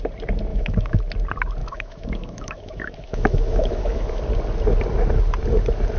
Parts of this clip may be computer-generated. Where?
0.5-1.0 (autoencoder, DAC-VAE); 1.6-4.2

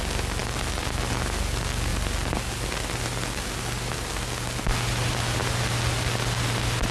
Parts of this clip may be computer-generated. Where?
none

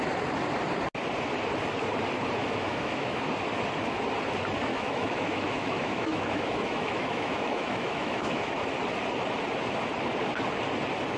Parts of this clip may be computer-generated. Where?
2.4-3.2 (autoencoder, DAC-VAE); 4.7-8.7

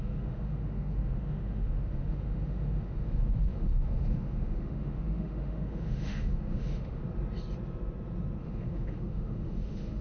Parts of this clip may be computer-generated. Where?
0.0-7.0 (autoencoder, DAC-VAE); 8.4-10.0

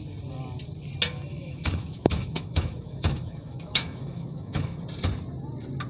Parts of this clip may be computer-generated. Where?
1.3-4.8 (autoencoder, DAC-VAE)

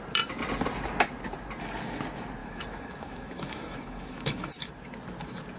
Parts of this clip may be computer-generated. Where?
2.4-4.7 (autoencoder, DAC-VAE)